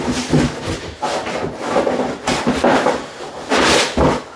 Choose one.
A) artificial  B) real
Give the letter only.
B